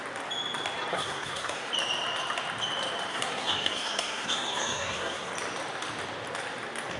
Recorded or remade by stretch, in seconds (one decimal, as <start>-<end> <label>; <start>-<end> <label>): 0.0-0.9 recorded; 0.9-1.7 remade; 1.7-3.1 recorded; 3.1-5.3 remade; 5.3-7.0 recorded